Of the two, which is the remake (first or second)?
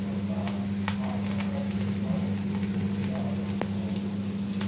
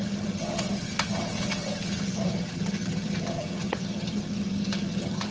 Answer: second